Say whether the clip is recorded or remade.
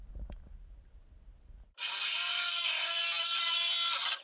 recorded